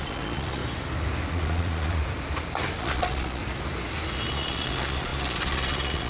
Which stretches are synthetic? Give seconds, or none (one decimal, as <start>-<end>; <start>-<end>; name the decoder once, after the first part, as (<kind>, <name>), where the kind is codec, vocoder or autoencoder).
0.0-0.6 (vocoder, Vocos); 1.3-2.0; 2.8-3.4; 4.3-6.1